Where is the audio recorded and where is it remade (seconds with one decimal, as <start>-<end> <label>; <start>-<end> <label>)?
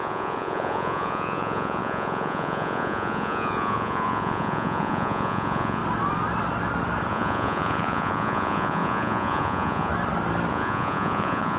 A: 0.0-5.8 remade; 5.8-7.1 recorded; 7.1-9.9 remade; 9.9-10.5 recorded; 10.5-11.6 remade